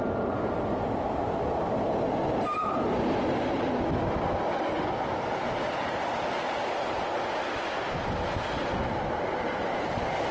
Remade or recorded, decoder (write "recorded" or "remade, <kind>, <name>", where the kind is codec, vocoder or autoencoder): recorded